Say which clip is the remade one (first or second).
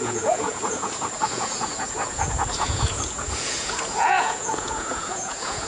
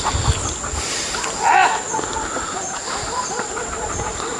first